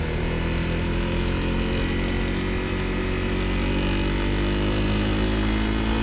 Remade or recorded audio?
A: recorded